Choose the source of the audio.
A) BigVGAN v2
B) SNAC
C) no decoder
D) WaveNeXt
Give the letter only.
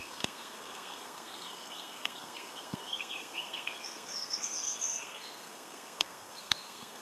B